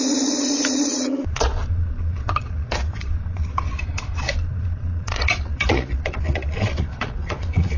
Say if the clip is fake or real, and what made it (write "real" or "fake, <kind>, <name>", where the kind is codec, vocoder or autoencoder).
fake, vocoder, Vocos